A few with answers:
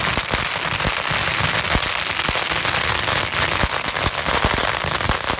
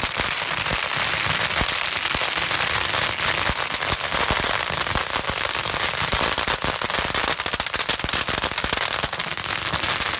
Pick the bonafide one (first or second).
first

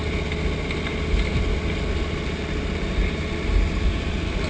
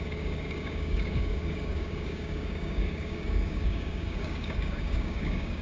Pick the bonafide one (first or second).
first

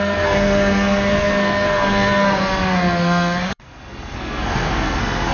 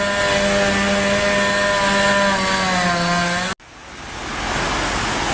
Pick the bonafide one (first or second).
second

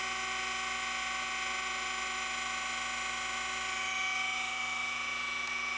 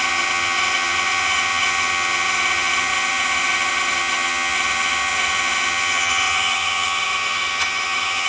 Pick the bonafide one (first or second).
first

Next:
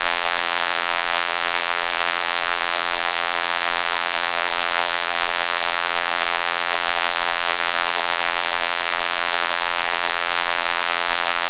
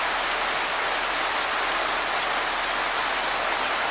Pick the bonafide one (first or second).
second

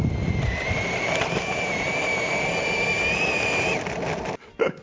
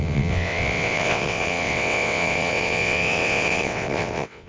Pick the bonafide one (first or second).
first